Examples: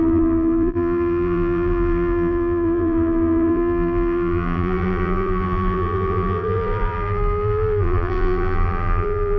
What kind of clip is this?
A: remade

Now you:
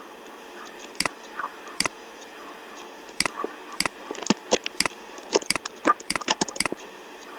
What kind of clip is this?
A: remade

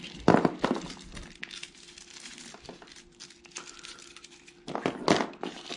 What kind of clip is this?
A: recorded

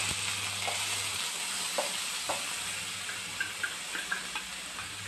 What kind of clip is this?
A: recorded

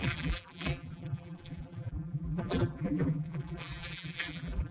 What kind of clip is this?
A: remade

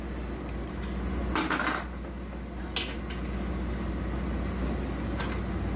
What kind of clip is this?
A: recorded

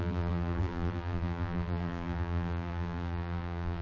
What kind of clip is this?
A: remade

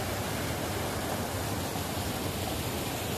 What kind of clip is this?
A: recorded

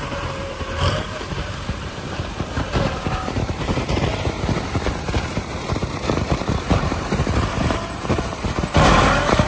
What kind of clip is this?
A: remade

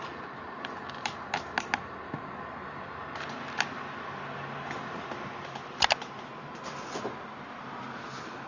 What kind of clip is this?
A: recorded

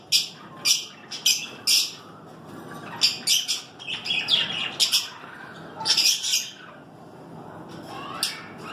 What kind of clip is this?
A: recorded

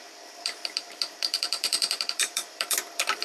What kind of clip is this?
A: remade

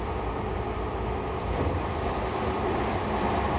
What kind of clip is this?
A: remade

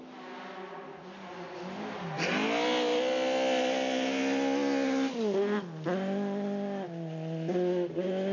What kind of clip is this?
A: recorded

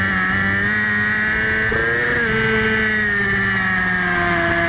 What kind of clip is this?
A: recorded